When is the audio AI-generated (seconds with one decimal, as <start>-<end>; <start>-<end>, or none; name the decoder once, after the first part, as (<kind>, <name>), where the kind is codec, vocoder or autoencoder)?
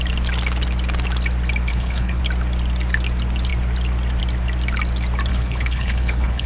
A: 1.7-2.2 (codec, HILCodec); 5.3-6.5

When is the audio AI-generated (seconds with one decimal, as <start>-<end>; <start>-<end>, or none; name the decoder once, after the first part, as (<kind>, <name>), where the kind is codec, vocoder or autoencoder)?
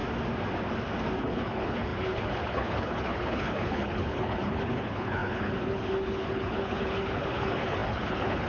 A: 1.2-8.5 (codec, HILCodec)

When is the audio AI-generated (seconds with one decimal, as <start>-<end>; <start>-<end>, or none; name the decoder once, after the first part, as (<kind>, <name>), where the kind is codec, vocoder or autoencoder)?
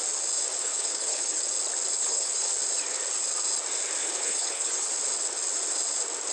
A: 0.6-1.4 (codec, HILCodec); 2.0-2.5; 4.0-4.9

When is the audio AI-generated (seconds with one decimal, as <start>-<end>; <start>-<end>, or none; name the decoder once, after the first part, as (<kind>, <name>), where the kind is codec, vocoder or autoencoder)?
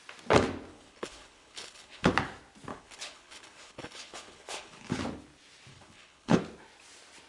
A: 0.7-2.1 (codec, HILCodec); 2.7-5.0; 5.7-6.4